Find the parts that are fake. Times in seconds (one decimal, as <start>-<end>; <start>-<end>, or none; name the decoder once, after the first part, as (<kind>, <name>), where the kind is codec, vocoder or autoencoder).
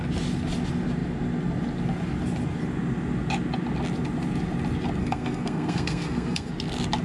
5.0-6.5 (codec, SNAC)